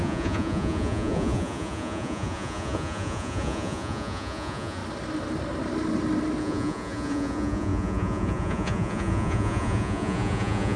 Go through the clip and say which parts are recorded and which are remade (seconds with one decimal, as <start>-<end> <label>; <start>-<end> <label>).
0.0-4.8 remade; 4.8-6.4 recorded; 6.4-10.8 remade

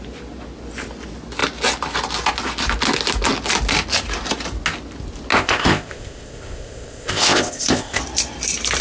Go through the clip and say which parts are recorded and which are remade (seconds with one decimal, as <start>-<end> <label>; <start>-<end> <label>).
0.0-5.3 recorded; 5.3-8.0 remade; 8.0-8.8 recorded

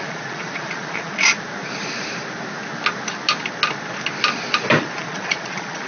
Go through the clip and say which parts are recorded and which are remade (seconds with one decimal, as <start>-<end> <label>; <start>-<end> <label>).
0.0-1.3 remade; 1.3-4.8 recorded; 4.8-5.9 remade

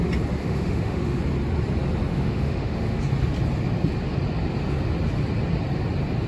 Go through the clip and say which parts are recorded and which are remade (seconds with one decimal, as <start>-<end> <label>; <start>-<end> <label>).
0.0-0.4 recorded; 0.4-1.2 remade; 1.2-2.1 recorded; 2.1-3.0 remade; 3.0-6.3 recorded

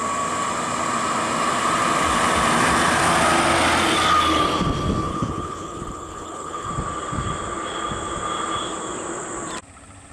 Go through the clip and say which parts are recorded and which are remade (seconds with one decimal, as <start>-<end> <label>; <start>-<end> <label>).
0.0-5.1 recorded; 5.1-6.7 remade; 6.7-10.1 recorded

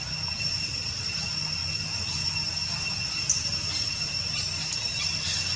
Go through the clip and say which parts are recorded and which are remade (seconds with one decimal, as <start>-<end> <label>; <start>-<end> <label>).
0.0-5.6 recorded

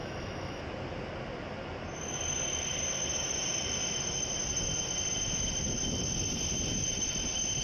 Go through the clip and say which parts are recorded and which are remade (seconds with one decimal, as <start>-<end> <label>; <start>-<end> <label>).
0.0-0.6 remade; 0.6-7.6 recorded